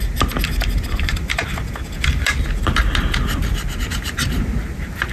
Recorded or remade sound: recorded